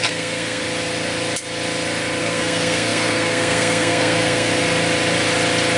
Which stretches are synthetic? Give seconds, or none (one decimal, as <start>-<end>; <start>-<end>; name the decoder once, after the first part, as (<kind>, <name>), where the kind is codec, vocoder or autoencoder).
0.0-0.6 (codec, SNAC); 2.2-4.5

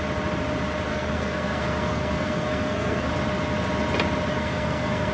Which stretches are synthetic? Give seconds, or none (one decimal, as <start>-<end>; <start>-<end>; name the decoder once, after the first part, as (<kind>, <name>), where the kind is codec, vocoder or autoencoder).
0.9-3.1 (codec, SNAC); 4.3-5.1